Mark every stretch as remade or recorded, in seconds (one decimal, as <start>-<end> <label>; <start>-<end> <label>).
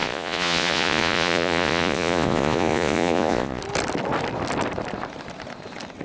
0.0-3.6 remade; 3.6-6.0 recorded